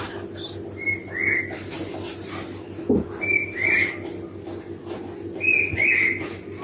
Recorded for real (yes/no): yes